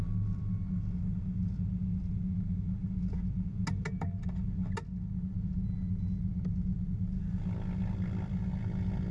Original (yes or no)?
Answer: yes